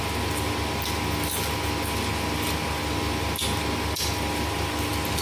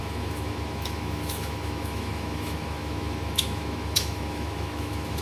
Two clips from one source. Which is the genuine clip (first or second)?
first